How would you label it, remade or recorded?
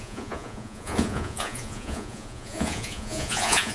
remade